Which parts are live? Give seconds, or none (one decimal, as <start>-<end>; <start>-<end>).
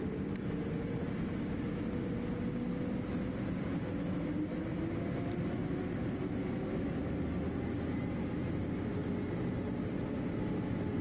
0.0-11.0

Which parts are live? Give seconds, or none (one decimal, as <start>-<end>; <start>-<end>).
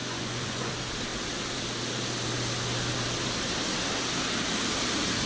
0.7-5.3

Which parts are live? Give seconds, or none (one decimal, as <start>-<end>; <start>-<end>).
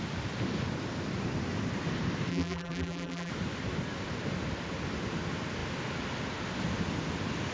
0.0-2.3; 3.3-7.5